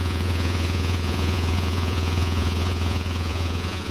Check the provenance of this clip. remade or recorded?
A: remade